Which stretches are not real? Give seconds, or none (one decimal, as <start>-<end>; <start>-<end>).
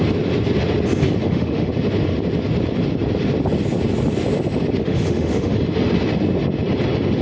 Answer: 1.2-1.7; 4.8-5.5